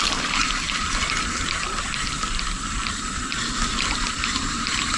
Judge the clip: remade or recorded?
recorded